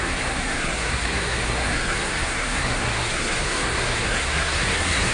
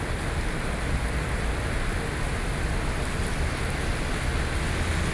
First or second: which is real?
second